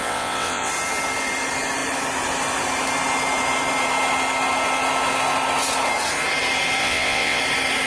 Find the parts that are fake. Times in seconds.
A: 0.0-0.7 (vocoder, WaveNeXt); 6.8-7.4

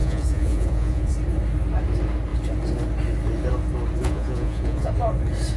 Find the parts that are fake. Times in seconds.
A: 0.0-1.1 (vocoder, Vocos); 4.0-4.9

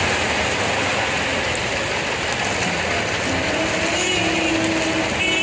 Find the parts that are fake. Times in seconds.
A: none

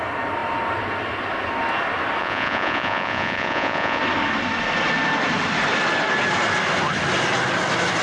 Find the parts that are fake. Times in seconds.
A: 2.2-4.0 (vocoder, Vocos)